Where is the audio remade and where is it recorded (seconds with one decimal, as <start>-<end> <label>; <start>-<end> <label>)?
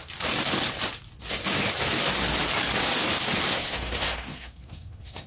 0.0-3.5 recorded; 3.5-5.3 remade